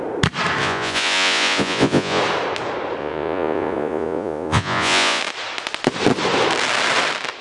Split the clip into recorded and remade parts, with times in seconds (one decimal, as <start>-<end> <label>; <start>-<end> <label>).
0.0-0.6 recorded; 0.6-2.2 remade; 2.2-3.0 recorded; 3.0-5.2 remade; 5.2-7.4 recorded